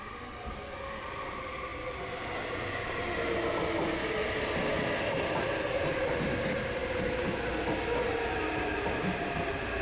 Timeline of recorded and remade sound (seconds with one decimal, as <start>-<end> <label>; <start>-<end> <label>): 0.0-9.8 recorded